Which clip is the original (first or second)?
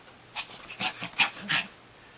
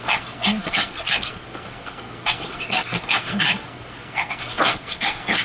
first